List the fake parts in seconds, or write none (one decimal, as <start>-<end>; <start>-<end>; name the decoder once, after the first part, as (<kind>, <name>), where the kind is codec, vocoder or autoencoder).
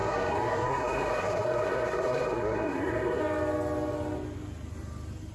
0.0-3.2 (codec, SNAC)